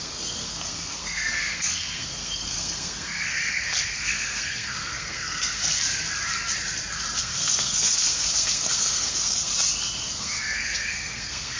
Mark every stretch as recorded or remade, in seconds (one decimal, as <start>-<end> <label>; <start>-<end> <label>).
0.0-5.6 remade; 5.6-7.2 recorded; 7.2-9.5 remade; 9.5-10.1 recorded; 10.1-11.6 remade